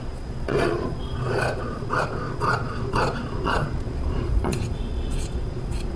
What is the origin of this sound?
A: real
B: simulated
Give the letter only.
B